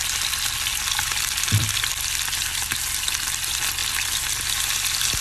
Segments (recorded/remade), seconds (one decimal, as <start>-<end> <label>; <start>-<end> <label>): 0.0-2.7 remade; 2.7-3.8 recorded; 3.8-4.8 remade; 4.8-5.2 recorded